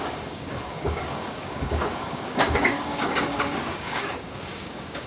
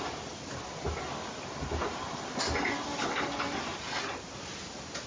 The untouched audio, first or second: second